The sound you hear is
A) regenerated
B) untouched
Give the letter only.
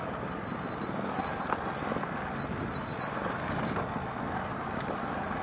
B